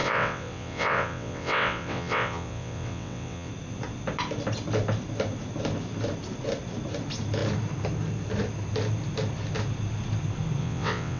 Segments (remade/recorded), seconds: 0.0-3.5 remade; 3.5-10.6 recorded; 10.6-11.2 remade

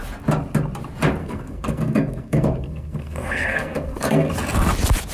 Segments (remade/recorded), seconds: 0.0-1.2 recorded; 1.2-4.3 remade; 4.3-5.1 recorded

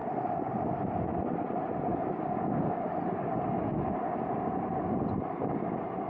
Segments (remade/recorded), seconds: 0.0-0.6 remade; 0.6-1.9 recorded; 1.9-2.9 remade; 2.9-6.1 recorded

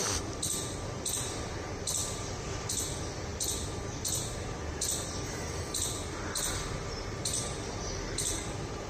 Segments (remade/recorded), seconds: 0.0-8.9 recorded